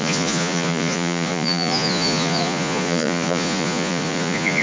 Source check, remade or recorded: remade